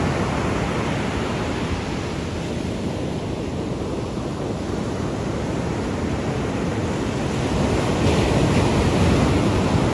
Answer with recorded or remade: recorded